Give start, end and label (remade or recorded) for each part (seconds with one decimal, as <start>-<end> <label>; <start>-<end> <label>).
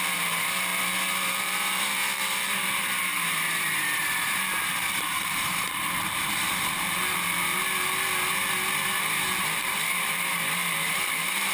0.0-7.0 remade; 7.0-9.4 recorded; 9.4-11.5 remade